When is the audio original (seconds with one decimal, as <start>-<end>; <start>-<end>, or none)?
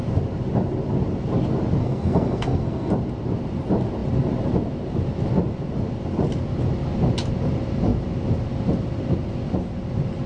0.0-1.8; 2.9-10.3